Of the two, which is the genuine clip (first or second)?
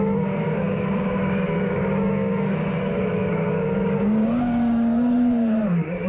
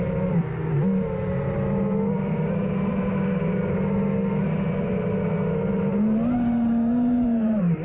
second